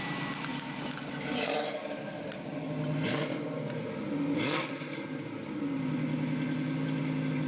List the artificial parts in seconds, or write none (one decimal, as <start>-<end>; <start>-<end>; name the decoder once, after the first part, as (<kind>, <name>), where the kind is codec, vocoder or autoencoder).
none